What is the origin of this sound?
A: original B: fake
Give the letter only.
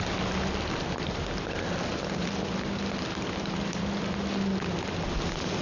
A